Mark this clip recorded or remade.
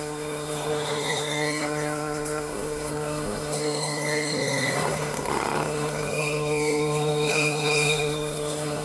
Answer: remade